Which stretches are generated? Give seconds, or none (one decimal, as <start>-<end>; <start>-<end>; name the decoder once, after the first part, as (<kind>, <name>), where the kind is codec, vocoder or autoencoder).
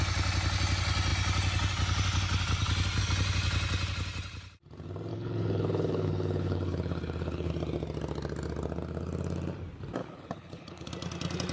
5.1-7.5 (codec, HILCodec); 10.0-10.9